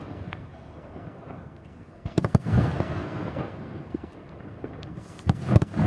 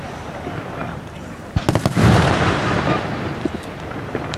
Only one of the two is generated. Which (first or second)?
first